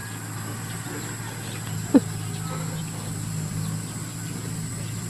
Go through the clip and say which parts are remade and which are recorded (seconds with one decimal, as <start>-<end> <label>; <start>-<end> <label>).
0.0-3.1 recorded; 3.1-5.1 remade